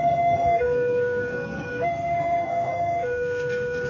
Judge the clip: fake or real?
fake